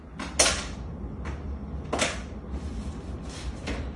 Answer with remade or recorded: recorded